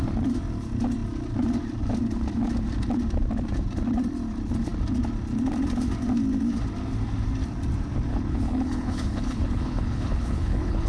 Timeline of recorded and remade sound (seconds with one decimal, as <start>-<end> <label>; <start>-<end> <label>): 0.0-8.1 recorded; 8.1-10.9 remade